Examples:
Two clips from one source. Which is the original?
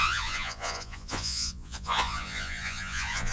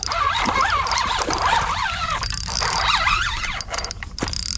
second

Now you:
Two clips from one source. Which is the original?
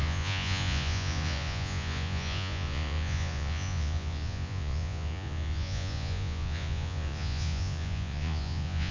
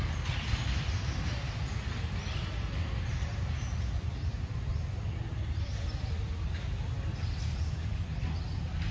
second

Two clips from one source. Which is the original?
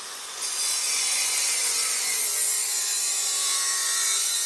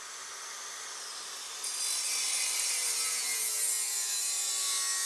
second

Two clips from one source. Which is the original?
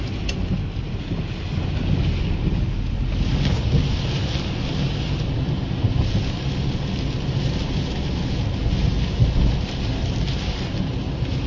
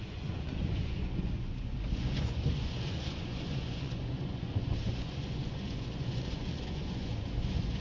first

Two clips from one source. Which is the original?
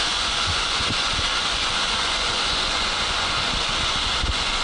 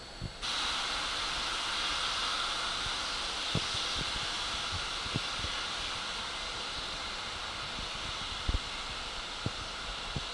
second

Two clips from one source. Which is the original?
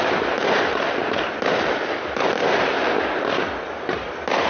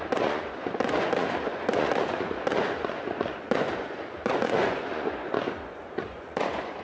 first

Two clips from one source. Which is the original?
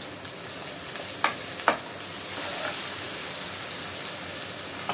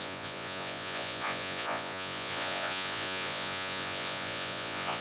first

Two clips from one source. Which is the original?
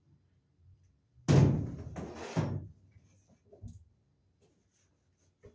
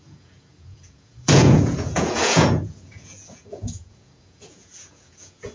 first